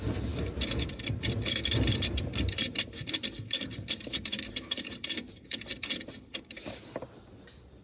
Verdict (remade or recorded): remade